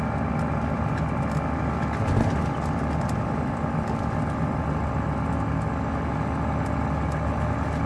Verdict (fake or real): real